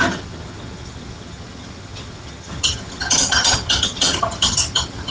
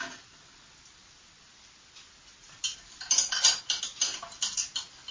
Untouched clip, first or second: second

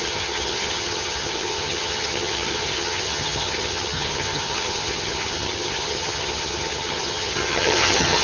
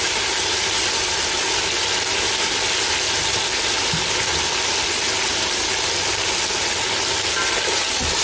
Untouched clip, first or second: second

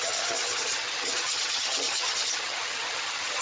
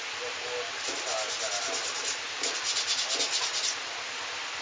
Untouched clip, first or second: second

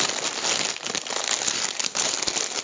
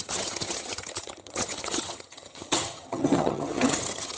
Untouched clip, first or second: first